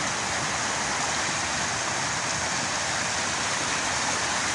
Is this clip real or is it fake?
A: real